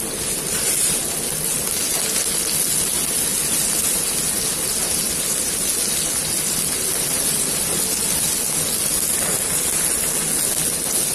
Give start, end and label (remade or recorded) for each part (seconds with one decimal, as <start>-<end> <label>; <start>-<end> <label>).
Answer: 0.0-11.1 recorded

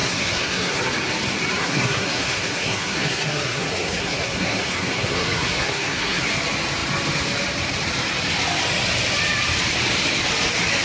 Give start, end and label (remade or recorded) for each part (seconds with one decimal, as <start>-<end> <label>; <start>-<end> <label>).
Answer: 0.0-0.8 remade; 0.8-1.6 recorded; 1.6-6.2 remade; 6.2-10.8 recorded

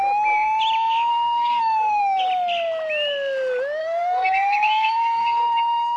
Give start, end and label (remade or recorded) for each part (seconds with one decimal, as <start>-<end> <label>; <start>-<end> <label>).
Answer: 0.0-1.1 recorded; 1.1-2.0 remade; 2.0-3.8 recorded; 3.8-6.0 remade

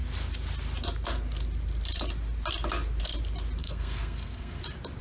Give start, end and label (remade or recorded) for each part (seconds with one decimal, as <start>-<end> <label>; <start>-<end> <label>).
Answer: 0.0-3.6 recorded; 3.6-4.6 remade; 4.6-5.0 recorded

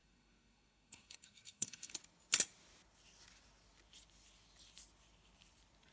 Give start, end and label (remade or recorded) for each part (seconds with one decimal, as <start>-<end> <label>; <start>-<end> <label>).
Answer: 0.0-1.9 remade; 1.9-5.9 recorded

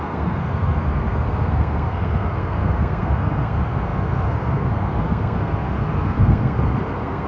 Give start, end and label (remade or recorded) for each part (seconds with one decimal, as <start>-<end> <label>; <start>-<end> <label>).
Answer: 0.0-7.3 remade